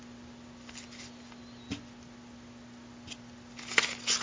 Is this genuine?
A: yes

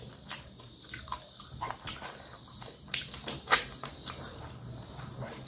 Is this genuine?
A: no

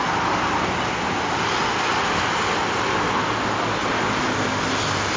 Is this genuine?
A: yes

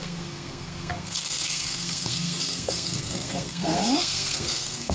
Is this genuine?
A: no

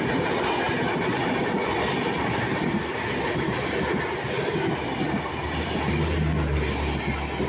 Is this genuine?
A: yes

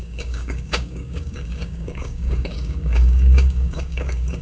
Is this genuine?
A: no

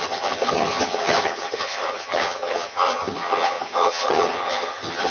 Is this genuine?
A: no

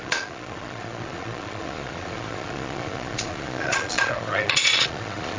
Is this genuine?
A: no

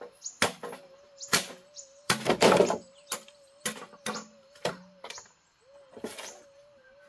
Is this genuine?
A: yes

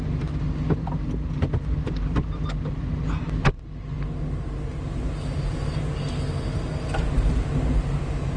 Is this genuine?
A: yes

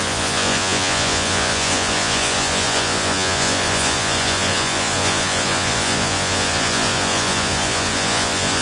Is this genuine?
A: no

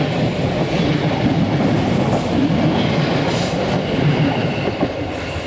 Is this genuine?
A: yes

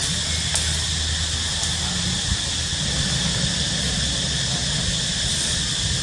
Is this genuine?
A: yes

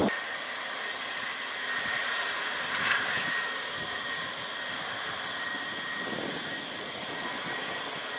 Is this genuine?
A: yes